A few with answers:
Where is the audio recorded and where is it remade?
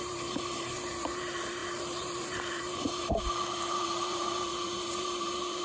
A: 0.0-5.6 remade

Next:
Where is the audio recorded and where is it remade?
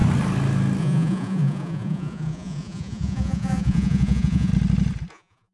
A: 0.0-0.8 recorded; 0.8-4.5 remade; 4.5-5.1 recorded; 5.1-5.5 remade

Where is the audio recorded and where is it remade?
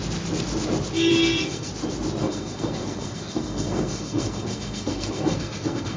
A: 0.0-1.1 recorded; 1.1-1.7 remade; 1.7-2.2 recorded; 2.2-6.0 remade